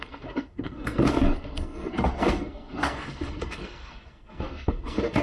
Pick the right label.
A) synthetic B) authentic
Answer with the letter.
A